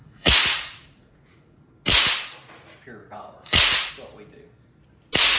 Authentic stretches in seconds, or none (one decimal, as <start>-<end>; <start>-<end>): 1.6-3.0; 3.9-5.4